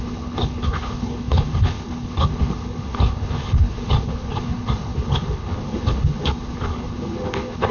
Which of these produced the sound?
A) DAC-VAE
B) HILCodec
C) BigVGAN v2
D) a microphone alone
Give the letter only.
B